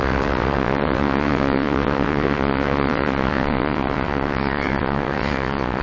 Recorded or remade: remade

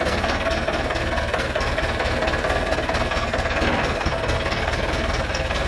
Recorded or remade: remade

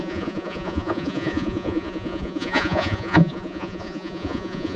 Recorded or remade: remade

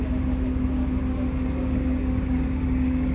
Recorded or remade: remade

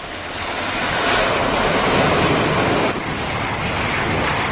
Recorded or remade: recorded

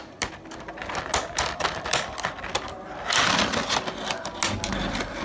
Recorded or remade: recorded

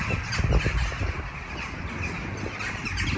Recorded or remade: recorded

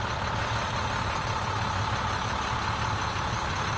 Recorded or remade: recorded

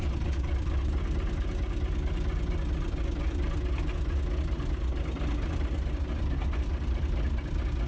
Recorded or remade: recorded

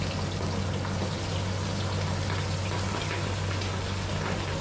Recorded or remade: recorded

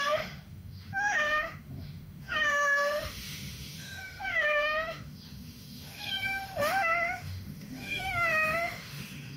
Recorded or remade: remade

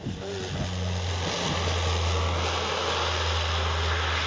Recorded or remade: recorded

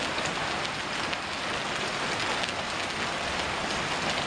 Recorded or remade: recorded